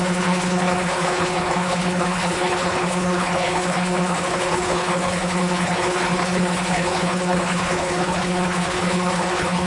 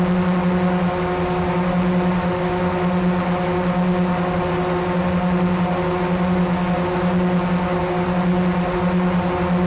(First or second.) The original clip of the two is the second